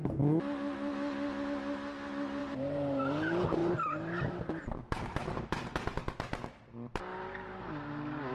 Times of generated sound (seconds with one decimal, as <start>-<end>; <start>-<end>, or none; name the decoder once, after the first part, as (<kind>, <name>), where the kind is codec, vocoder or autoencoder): 2.4-3.0 (vocoder, BigVGAN v2); 3.6-5.7; 7.1-7.6